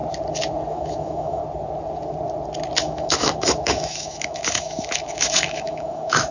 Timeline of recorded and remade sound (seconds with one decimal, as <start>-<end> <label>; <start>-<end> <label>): 0.0-0.7 recorded; 0.7-1.4 remade; 1.4-2.8 recorded; 2.8-6.3 remade